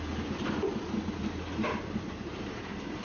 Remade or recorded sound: recorded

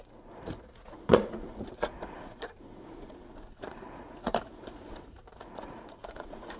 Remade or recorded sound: remade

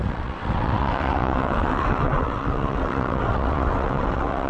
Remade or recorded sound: remade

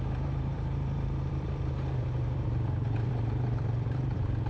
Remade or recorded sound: remade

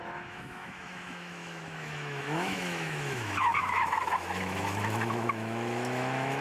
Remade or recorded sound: remade